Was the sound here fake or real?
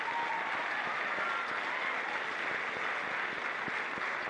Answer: real